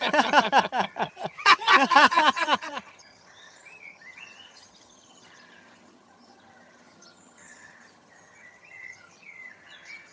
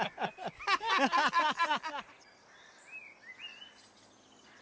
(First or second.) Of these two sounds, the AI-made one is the first